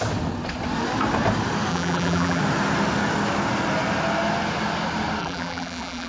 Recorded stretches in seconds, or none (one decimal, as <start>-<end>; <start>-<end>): 0.0-1.7; 2.4-5.2